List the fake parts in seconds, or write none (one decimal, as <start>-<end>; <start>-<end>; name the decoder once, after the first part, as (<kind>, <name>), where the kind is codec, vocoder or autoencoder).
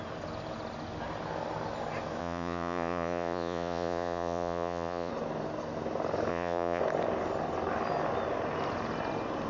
2.2-5.1 (vocoder, Vocos); 6.3-6.8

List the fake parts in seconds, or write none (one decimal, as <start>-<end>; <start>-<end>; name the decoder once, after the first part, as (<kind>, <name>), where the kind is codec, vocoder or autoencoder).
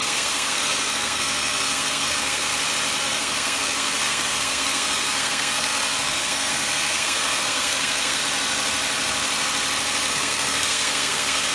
0.0-2.5 (codec, SNAC); 3.0-8.2; 10.1-11.5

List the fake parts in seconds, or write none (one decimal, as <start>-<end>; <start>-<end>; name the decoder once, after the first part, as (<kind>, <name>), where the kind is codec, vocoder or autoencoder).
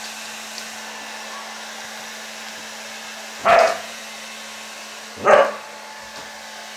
3.4-4.0 (vocoder, Vocos)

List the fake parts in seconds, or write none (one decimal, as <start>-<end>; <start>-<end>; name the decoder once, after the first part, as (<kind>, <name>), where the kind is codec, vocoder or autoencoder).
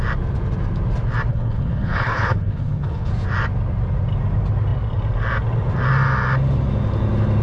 1.3-3.1 (codec, HILCodec)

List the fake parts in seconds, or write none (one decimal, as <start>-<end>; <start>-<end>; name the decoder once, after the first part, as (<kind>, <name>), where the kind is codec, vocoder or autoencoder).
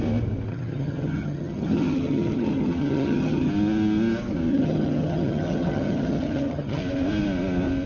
0.5-3.5 (vocoder, HiFi-GAN); 4.5-6.8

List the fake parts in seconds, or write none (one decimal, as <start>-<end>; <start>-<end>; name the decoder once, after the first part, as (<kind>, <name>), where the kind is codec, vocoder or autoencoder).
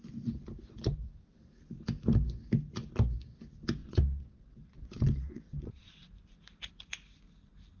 3.8-6.1 (vocoder, WaveNeXt)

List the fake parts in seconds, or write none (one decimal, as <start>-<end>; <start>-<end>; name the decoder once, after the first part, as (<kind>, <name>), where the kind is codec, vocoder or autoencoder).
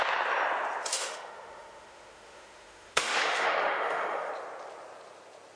0.9-4.3 (autoencoder, DAC-VAE)